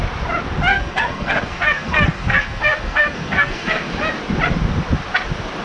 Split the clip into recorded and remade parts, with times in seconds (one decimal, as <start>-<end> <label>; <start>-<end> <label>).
0.0-0.7 recorded; 0.7-3.9 remade; 3.9-5.6 recorded